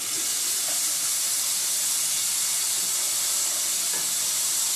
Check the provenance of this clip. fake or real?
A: real